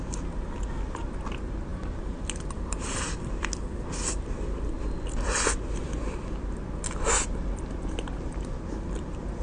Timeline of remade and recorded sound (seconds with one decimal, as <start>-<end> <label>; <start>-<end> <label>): 0.0-9.4 recorded